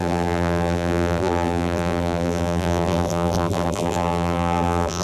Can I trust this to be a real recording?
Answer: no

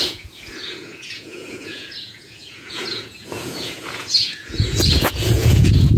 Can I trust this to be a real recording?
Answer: no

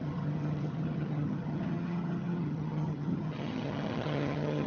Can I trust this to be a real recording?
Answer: no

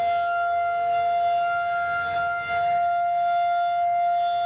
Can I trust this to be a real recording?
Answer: yes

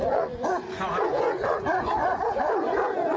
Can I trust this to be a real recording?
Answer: no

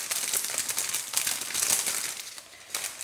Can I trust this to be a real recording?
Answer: yes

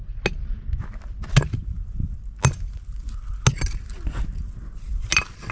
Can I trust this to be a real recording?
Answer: yes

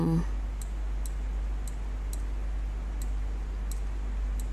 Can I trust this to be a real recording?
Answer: yes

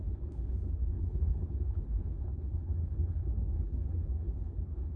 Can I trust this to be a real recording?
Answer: no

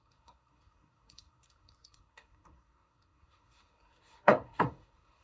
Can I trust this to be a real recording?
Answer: no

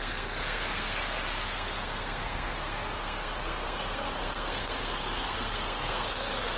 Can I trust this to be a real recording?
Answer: no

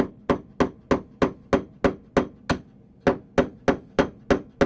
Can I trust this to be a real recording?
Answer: yes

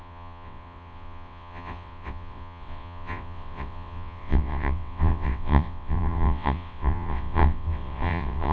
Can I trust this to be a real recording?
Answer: no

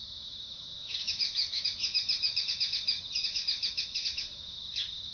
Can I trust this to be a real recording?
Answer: no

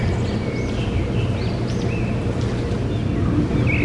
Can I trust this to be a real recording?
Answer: yes